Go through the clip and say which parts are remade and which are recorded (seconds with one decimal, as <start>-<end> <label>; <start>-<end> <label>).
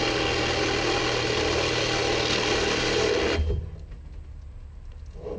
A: 0.0-5.4 recorded